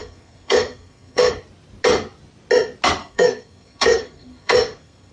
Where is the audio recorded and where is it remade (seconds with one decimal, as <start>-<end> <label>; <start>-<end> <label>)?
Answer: 0.0-1.3 remade; 1.3-3.0 recorded; 3.0-5.1 remade